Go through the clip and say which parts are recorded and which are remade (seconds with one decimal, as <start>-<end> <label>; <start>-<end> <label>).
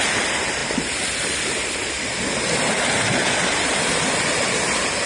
0.0-5.1 recorded